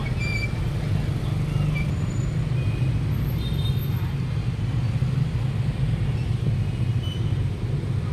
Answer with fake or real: real